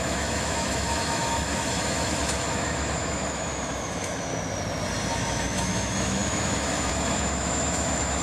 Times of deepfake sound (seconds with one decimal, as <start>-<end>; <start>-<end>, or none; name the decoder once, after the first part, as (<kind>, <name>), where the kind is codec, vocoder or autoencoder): 0.0-4.3 (autoencoder, DAC-VAE); 5.1-8.2